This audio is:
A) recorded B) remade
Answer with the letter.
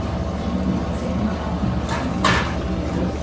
A